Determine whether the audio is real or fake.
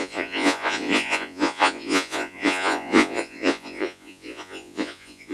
fake